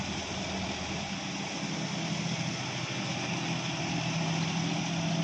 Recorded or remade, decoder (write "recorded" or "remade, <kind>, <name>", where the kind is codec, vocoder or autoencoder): recorded